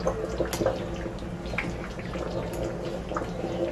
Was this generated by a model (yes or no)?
no